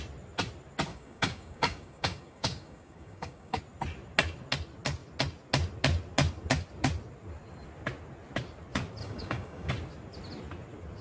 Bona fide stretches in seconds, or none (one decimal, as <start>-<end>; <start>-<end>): 0.0-0.9; 3.6-9.0; 9.7-11.0